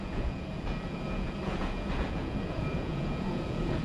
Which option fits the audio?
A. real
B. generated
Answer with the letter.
B